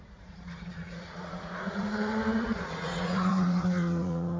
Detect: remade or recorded remade